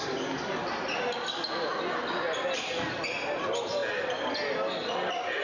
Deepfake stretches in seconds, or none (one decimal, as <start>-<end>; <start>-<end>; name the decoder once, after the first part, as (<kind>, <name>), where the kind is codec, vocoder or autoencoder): none